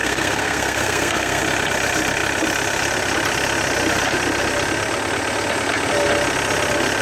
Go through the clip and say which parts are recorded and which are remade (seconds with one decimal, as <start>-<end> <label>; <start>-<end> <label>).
0.0-1.4 remade; 1.4-7.0 recorded